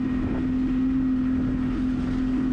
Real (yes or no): yes